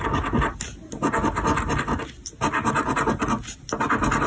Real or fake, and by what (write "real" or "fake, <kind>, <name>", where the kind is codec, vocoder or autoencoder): real